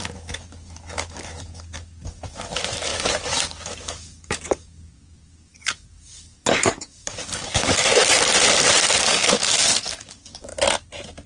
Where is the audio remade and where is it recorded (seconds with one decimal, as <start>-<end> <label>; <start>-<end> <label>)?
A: 0.0-7.9 remade; 7.9-9.0 recorded; 9.0-10.5 remade; 10.5-11.3 recorded